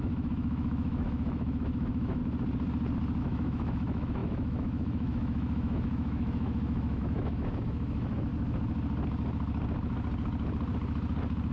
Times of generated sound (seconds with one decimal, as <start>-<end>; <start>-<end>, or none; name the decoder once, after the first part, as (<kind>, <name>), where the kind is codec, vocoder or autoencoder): 0.0-2.2 (autoencoder, DAC-VAE); 3.2-8.3